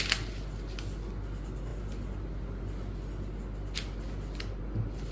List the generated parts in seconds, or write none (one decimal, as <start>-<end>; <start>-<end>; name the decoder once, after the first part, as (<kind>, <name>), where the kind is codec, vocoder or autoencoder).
none